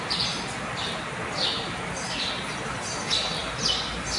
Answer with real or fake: real